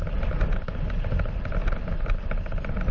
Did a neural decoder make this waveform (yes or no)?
no